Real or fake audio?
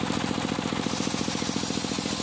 real